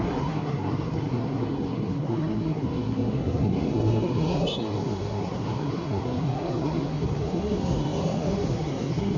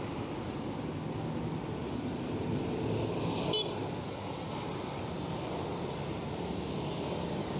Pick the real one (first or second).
second